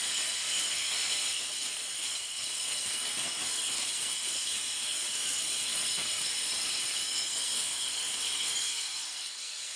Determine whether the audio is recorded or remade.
remade